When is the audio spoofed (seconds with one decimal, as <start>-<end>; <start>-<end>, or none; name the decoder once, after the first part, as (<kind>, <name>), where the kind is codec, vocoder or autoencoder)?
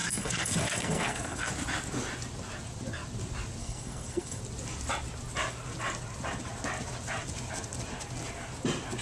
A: 0.0-1.5 (codec, SNAC); 3.6-4.4